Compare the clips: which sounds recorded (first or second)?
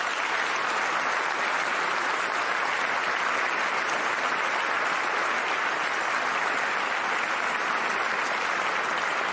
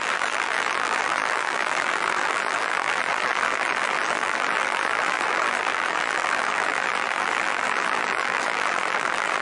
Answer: first